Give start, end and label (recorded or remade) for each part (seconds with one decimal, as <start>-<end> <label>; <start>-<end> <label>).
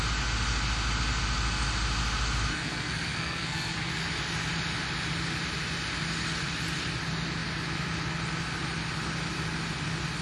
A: 0.0-2.5 recorded; 2.5-3.9 remade; 3.9-10.2 recorded